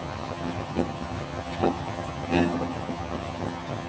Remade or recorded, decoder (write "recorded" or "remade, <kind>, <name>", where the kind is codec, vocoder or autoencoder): remade, vocoder, HiFi-GAN